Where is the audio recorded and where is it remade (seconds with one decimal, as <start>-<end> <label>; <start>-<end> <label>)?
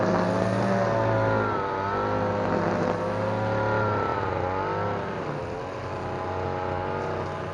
0.0-7.5 recorded